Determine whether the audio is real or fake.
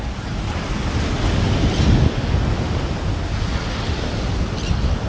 real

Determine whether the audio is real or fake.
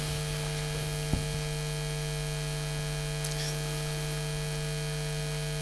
real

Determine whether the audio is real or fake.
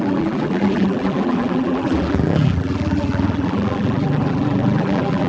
fake